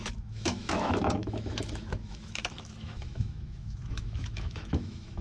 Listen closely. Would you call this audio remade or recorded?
remade